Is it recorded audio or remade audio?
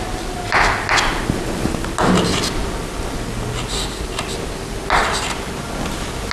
recorded